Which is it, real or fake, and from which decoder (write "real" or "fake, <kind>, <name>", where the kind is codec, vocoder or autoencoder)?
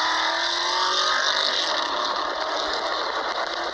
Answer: real